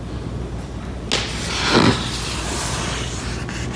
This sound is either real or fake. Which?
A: real